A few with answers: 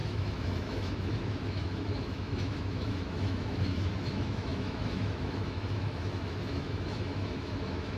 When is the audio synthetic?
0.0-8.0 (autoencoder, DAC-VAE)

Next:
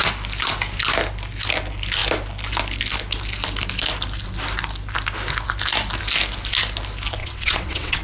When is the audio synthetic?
7.2-8.0 (vocoder, WaveNeXt)

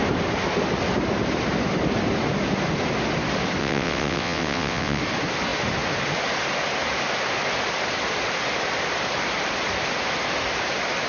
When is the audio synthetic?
3.6-5.0 (vocoder, WaveNeXt)

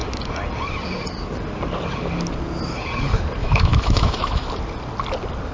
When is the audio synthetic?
3.4-4.5 (autoencoder, DAC-VAE)

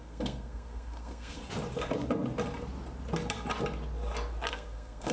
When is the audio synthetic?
0.0-1.4 (codec, SNAC); 4.5-5.1

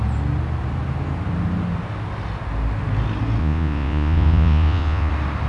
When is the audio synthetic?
3.4-5.1 (vocoder, Vocos)

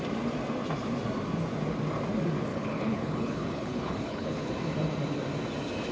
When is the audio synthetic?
2.5-4.5 (codec, HILCodec)